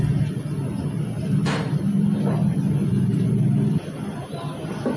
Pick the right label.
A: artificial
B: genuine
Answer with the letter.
B